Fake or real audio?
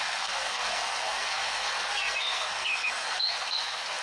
fake